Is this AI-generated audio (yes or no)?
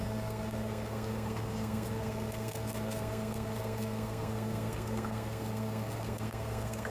yes